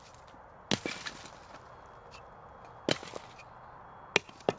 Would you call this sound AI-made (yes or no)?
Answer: no